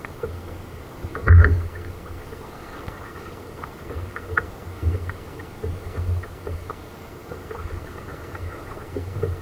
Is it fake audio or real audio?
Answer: fake